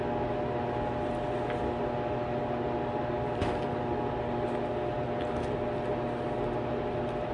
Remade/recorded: recorded